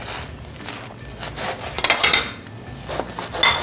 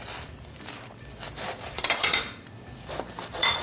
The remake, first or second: second